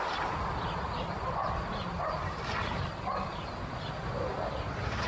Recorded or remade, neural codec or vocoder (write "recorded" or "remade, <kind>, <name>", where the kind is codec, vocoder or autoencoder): recorded